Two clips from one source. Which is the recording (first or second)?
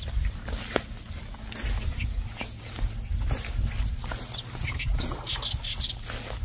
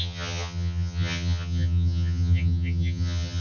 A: first